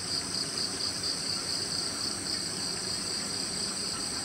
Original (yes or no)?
no